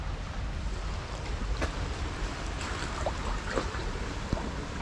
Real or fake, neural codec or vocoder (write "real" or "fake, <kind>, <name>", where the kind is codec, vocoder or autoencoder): real